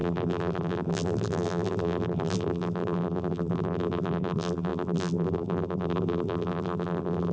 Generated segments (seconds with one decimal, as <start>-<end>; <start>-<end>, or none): 0.0-7.3